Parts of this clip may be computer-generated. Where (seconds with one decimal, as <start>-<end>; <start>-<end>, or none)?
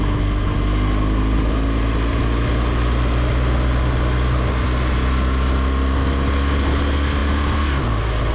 none